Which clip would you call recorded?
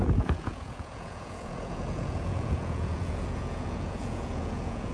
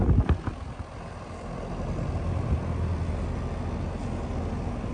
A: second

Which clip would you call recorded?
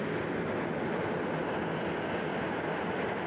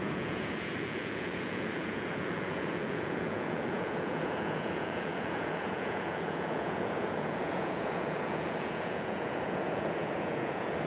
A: first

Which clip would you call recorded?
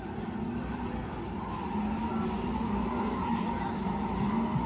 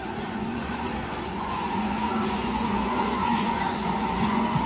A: first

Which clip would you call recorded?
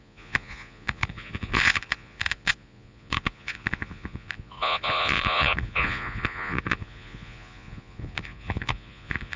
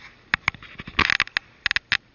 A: second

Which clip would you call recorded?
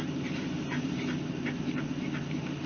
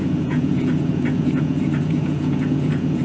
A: first